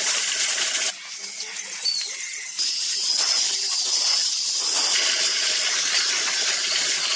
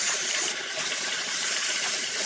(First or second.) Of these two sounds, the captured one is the first